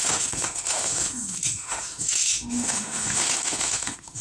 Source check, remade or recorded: remade